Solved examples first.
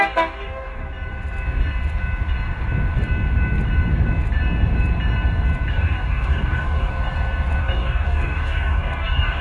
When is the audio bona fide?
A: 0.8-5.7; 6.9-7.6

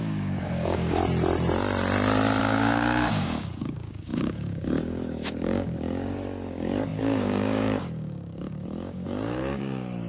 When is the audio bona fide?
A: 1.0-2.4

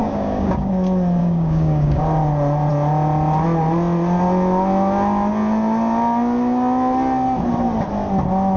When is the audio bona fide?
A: 0.7-1.2; 2.0-8.6

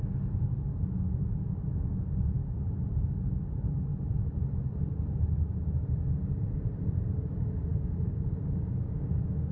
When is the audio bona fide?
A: 0.0-7.7